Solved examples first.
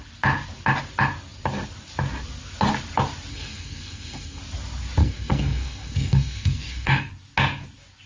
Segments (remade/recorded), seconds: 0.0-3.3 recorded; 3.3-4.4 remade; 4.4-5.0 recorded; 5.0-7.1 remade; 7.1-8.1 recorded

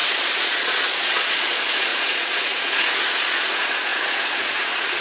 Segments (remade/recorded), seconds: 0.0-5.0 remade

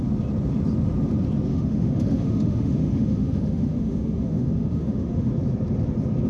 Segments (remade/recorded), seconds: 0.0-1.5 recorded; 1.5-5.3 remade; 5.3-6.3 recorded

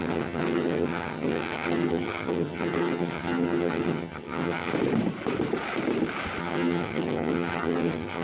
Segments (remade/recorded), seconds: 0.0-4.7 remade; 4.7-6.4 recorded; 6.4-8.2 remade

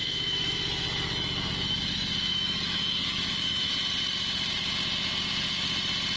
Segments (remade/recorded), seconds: 0.0-3.7 remade; 3.7-6.2 recorded

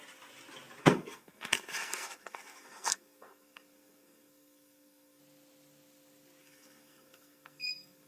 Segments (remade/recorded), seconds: 0.0-0.8 recorded; 0.8-5.2 remade; 5.2-6.4 recorded; 6.4-8.1 remade

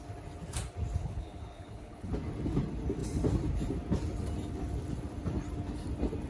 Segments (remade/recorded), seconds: 0.0-1.0 recorded; 1.0-2.1 remade; 2.1-6.3 recorded

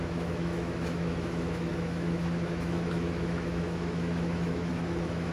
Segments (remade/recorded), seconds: 0.0-5.3 remade